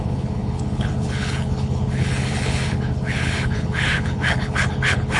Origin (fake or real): fake